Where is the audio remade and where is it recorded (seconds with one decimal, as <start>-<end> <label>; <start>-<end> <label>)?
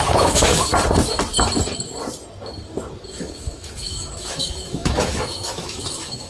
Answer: 0.0-0.7 remade; 0.7-3.1 recorded; 3.1-6.3 remade